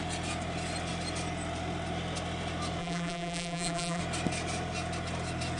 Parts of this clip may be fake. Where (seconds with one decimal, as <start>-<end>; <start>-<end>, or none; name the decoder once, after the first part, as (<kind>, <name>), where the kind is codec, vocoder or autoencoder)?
2.8-4.0 (vocoder, BigVGAN v2)